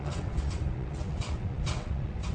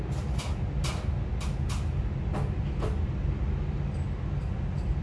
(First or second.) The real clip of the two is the second